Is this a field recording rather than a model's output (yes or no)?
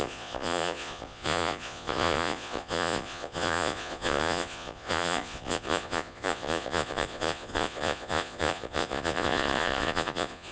no